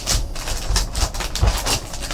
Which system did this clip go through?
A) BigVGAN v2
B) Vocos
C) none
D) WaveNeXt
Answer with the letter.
C